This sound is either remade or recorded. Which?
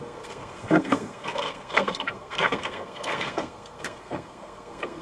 remade